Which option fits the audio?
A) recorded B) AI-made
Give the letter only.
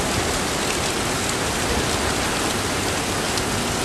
A